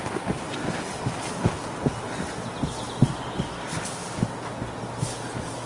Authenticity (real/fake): real